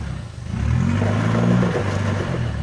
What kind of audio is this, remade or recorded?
recorded